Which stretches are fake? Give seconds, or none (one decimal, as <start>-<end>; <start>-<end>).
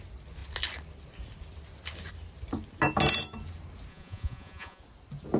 3.9-4.8